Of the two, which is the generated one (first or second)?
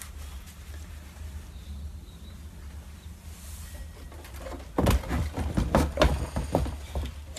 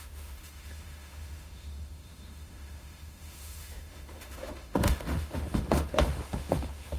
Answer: second